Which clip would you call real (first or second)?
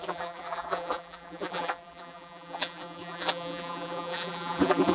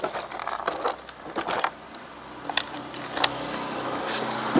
second